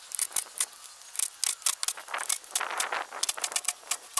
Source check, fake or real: real